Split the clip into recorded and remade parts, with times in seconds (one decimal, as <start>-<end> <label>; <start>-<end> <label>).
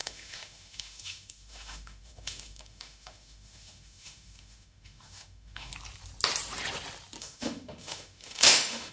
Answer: 0.0-5.7 remade; 5.7-7.2 recorded; 7.2-8.9 remade